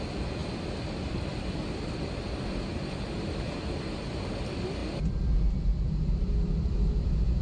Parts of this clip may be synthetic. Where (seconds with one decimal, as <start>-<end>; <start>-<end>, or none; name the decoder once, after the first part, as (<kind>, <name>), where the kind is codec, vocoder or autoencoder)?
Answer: none